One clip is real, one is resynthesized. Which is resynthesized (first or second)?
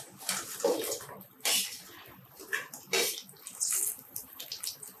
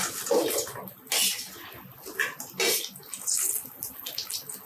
first